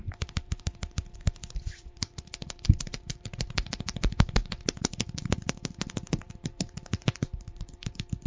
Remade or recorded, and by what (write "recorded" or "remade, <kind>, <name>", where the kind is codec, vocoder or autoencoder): remade, vocoder, BigVGAN v2